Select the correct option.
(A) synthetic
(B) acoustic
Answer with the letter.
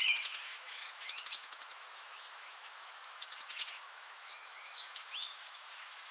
A